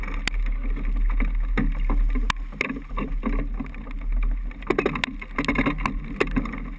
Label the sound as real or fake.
real